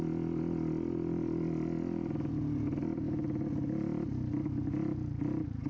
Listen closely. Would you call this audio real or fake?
real